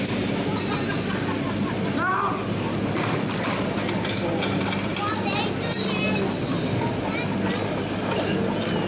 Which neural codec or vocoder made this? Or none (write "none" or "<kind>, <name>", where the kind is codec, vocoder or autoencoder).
none